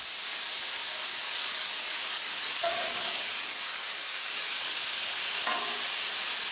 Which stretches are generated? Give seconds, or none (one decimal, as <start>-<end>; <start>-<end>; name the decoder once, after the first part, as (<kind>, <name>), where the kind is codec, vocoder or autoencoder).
1.1-4.8 (codec, DAC)